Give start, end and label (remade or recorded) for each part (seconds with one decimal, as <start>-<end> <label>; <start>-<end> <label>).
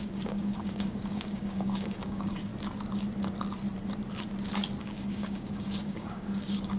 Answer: 0.0-2.5 remade; 2.5-4.8 recorded; 4.8-6.8 remade